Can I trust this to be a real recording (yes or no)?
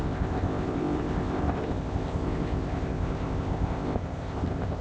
no